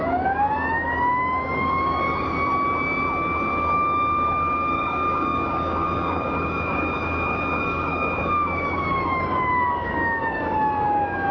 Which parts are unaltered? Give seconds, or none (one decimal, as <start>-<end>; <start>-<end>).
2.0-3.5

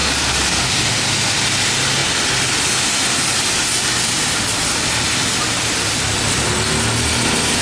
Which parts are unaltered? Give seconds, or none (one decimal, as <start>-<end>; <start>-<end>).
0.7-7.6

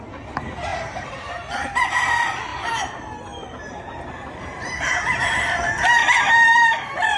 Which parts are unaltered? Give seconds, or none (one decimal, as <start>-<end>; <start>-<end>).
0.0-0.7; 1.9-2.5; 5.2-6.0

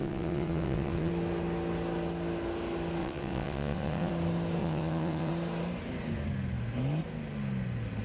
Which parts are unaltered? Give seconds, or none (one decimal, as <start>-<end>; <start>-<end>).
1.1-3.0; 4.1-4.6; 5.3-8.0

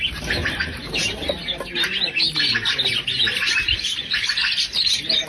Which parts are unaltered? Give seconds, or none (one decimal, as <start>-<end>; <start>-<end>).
0.0-5.3

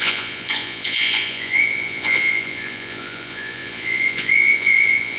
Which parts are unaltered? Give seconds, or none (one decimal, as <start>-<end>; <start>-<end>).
none

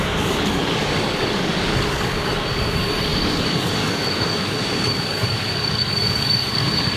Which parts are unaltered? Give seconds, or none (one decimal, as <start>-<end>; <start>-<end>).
none

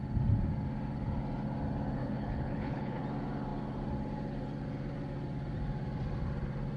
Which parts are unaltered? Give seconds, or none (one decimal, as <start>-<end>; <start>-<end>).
0.0-2.0; 3.0-6.8